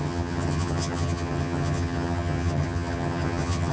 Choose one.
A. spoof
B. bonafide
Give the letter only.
A